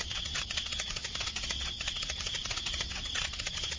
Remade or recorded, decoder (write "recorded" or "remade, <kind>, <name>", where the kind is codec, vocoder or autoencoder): remade, vocoder, WaveNeXt